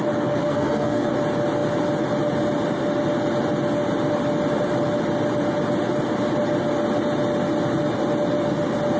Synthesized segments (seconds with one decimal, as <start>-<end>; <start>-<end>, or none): 0.4-1.1